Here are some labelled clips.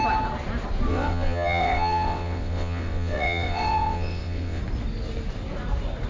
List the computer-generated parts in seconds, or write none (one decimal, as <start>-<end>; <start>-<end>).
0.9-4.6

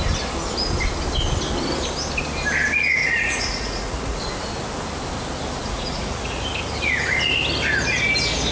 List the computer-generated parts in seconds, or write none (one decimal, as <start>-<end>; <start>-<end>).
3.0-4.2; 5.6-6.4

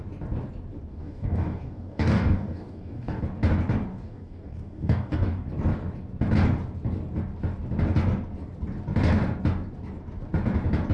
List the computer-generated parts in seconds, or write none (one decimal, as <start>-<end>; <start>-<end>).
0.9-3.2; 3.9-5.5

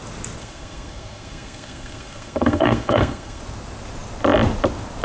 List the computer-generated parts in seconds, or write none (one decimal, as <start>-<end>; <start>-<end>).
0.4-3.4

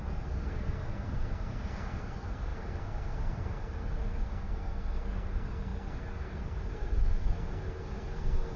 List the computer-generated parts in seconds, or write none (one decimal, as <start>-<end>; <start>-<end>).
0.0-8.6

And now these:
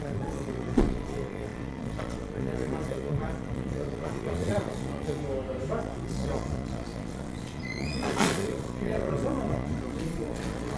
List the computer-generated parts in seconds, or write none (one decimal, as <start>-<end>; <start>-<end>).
0.0-5.2; 5.8-10.8